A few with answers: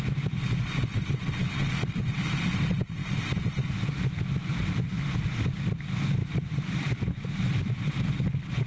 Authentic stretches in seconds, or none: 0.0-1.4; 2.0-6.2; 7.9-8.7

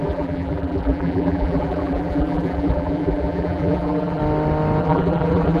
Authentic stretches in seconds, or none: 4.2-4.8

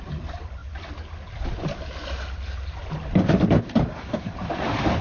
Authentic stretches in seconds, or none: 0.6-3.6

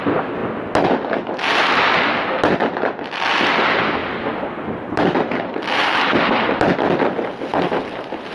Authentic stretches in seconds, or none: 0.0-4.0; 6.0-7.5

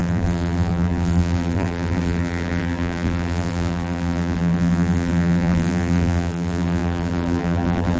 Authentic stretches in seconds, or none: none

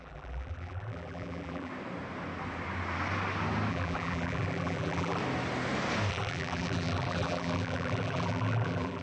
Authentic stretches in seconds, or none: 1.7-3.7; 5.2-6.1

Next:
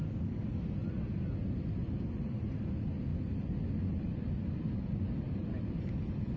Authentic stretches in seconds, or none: 0.0-3.1; 5.8-6.4

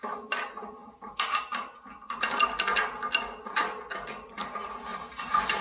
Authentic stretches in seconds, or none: 0.0-4.9